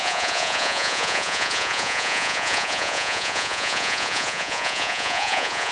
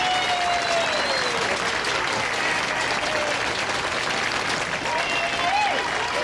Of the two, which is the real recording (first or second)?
second